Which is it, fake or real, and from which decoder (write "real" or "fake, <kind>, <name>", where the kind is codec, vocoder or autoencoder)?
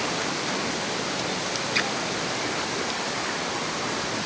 real